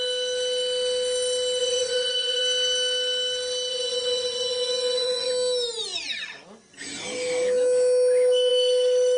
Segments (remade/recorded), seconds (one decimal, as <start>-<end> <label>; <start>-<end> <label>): 0.0-1.6 recorded; 1.6-2.4 remade; 2.4-3.7 recorded; 3.7-5.3 remade; 5.3-9.2 recorded